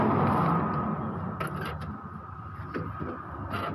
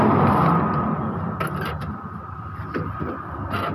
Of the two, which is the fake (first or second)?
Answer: second